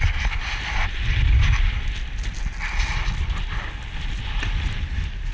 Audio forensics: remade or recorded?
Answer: recorded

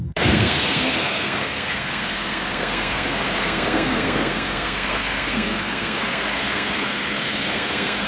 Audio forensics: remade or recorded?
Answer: remade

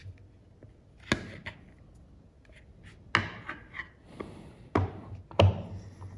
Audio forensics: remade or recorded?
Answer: recorded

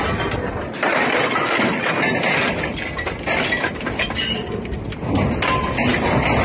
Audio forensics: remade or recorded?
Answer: recorded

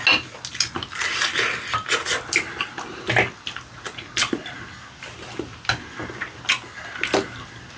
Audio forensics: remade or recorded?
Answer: recorded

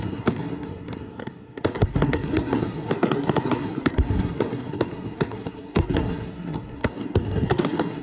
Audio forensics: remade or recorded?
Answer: remade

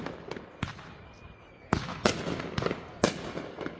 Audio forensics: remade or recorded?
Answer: recorded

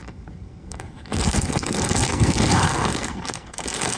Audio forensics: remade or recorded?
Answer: remade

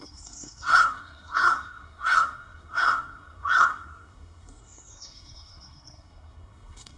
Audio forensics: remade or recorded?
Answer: remade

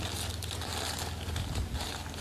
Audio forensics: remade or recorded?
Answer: recorded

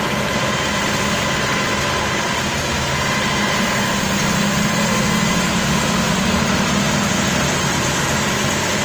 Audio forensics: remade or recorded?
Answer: recorded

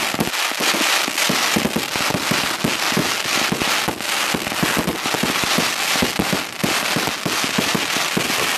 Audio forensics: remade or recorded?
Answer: recorded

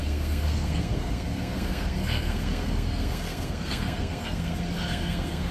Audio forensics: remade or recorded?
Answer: remade